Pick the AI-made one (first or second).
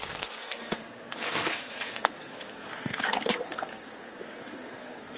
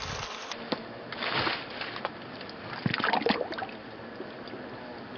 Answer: first